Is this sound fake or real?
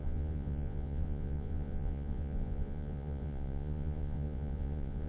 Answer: fake